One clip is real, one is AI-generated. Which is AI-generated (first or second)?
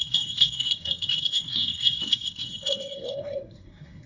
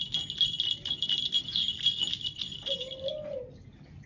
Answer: first